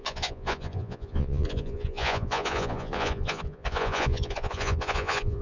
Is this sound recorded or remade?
remade